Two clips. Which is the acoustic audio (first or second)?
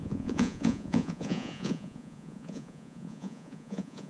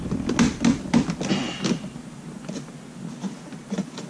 second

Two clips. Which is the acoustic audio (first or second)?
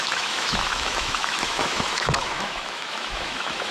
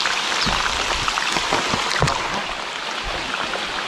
second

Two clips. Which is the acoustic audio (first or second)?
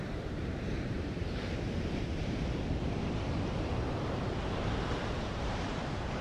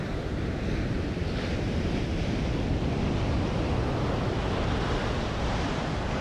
second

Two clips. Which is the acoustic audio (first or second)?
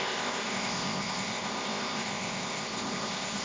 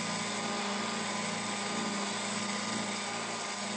second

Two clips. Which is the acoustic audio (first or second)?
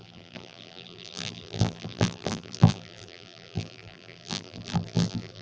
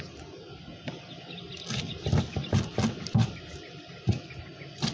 second